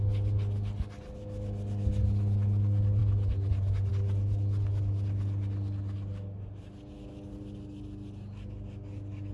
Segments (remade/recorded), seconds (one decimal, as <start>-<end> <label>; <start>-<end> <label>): 0.0-9.3 recorded